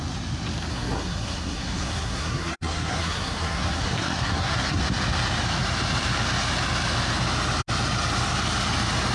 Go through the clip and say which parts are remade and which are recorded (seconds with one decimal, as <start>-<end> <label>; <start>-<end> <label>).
0.0-0.7 recorded; 0.7-4.8 remade; 4.8-9.1 recorded